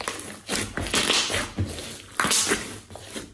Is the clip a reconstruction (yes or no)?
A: no